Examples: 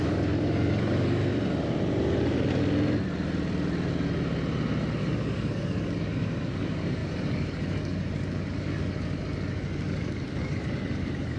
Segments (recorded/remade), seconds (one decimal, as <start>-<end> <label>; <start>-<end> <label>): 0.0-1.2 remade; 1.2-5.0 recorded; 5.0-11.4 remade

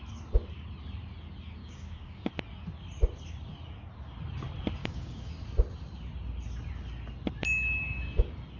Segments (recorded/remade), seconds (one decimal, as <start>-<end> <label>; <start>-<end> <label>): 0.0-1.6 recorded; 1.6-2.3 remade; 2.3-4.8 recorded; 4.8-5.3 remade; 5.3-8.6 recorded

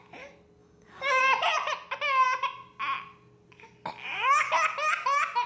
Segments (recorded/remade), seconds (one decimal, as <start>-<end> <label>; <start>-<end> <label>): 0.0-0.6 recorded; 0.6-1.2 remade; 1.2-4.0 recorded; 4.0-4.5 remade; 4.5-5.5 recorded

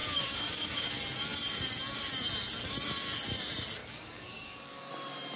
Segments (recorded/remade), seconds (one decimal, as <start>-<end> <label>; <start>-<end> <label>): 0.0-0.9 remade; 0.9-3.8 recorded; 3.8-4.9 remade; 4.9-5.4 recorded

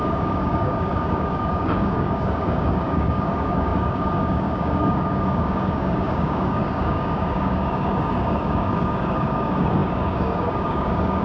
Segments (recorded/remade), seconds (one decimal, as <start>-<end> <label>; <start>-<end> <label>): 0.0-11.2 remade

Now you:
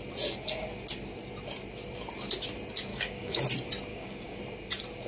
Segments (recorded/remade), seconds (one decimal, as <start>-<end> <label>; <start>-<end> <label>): 0.0-2.9 recorded; 2.9-3.4 remade; 3.4-3.9 recorded; 3.9-4.4 remade; 4.4-5.1 recorded

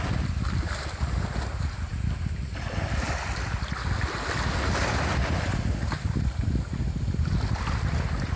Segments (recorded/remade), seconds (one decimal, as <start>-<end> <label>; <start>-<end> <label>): 0.0-8.4 recorded